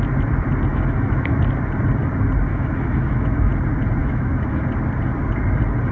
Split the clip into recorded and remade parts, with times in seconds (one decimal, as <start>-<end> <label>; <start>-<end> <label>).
0.0-0.7 recorded; 0.7-1.4 remade; 1.4-2.5 recorded; 2.5-3.5 remade; 3.5-4.0 recorded; 4.0-4.6 remade; 4.6-5.9 recorded